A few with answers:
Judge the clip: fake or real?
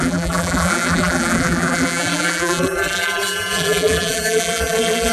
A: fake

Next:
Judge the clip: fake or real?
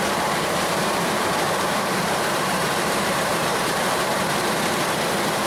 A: fake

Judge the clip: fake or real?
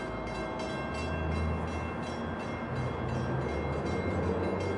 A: real